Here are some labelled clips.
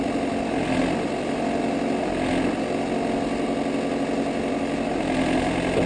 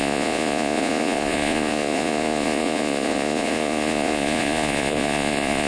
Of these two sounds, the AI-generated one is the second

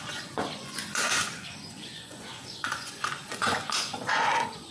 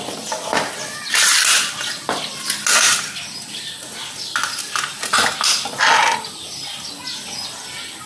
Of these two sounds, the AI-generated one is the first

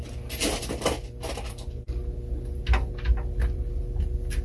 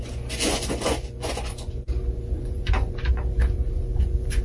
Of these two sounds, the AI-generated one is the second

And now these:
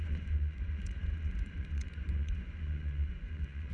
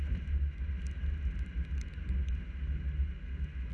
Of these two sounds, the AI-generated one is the first